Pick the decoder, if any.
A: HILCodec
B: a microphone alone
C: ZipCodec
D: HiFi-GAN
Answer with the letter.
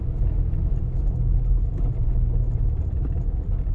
B